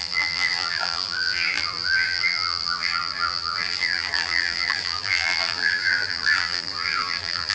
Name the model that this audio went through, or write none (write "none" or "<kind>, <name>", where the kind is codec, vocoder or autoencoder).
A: vocoder, BigVGAN v2